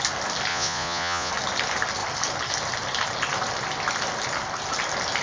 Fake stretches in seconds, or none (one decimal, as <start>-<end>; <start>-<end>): 0.5-1.3